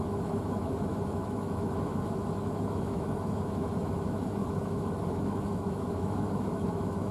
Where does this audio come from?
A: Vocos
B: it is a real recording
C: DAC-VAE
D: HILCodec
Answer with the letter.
C